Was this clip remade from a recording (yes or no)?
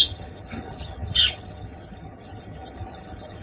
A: yes